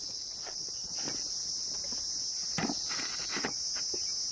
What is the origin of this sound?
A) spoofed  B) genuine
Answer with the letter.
B